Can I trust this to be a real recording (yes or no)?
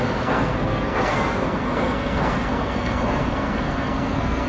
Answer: no